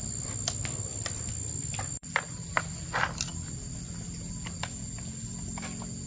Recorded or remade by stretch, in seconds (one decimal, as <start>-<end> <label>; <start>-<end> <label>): 0.0-6.1 recorded

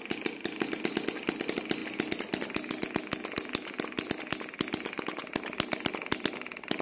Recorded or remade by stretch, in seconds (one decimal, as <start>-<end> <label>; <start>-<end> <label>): 0.0-6.8 recorded

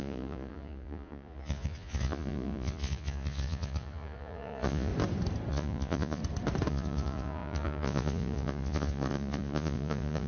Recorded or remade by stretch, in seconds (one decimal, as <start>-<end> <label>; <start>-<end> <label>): 0.0-4.9 remade; 4.9-5.5 recorded; 5.5-6.2 remade; 6.2-6.7 recorded; 6.7-10.3 remade

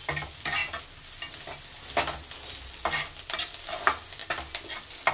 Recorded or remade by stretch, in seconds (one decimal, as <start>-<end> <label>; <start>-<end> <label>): 0.0-5.1 recorded

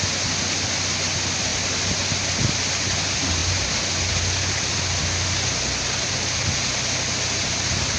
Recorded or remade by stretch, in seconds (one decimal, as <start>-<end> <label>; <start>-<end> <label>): 0.0-8.0 recorded

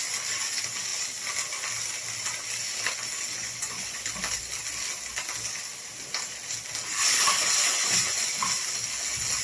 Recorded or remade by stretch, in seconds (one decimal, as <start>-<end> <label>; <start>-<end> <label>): 0.0-3.4 recorded; 3.4-4.0 remade; 4.0-7.7 recorded; 7.7-8.3 remade; 8.3-9.4 recorded